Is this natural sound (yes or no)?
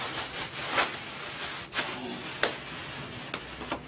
yes